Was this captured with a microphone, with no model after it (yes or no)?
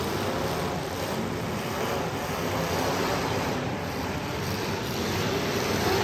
no